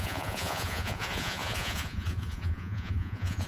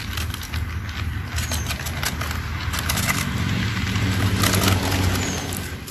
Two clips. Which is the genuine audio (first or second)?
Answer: second